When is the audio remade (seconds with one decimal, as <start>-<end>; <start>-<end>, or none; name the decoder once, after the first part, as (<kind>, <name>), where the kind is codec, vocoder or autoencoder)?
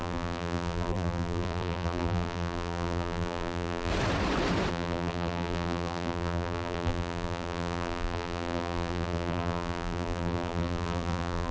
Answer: 0.0-3.9 (vocoder, BigVGAN v2); 4.7-11.5